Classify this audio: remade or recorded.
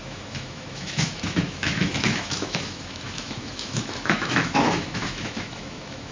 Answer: remade